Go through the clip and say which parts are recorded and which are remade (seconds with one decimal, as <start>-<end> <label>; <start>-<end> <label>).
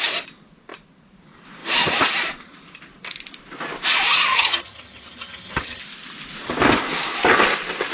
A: 0.0-4.3 recorded; 4.3-5.8 remade; 5.8-7.9 recorded